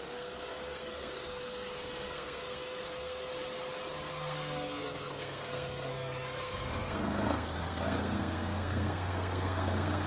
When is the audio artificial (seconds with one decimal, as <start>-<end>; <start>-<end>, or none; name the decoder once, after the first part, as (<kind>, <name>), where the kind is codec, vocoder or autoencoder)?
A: 0.0-3.3 (codec, SNAC); 4.1-10.1